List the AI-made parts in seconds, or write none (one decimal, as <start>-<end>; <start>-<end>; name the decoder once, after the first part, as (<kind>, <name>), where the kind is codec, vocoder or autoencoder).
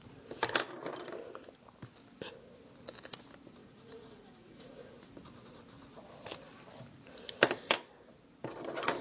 3.6-4.9 (vocoder, Vocos)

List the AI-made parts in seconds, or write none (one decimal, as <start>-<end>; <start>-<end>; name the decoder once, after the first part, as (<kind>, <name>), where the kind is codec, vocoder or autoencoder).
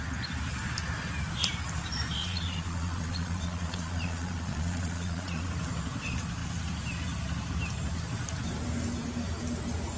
2.2-5.5 (vocoder, Vocos)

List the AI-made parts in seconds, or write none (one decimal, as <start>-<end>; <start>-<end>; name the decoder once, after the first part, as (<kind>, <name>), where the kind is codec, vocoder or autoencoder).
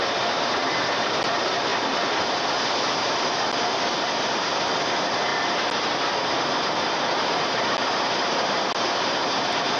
none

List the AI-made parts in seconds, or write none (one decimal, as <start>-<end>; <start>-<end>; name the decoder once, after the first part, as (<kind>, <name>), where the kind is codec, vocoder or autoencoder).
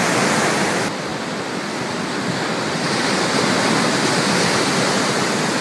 none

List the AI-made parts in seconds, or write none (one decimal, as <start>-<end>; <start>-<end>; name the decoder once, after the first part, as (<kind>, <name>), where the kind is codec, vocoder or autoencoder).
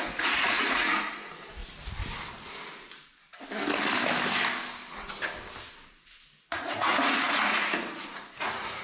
0.0-1.6 (vocoder, Vocos); 5.7-8.8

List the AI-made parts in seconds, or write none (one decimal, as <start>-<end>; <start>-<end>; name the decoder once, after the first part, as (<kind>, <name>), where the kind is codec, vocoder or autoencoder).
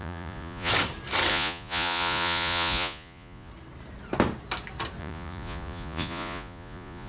0.0-0.7 (vocoder, Vocos); 1.3-3.5; 5.0-7.1